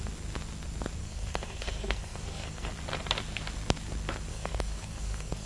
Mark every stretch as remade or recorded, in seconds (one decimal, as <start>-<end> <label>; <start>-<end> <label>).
0.0-1.0 recorded; 1.0-2.7 remade; 2.7-4.3 recorded; 4.3-5.5 remade